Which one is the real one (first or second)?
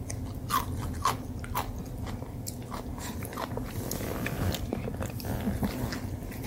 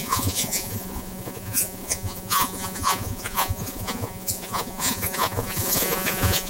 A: first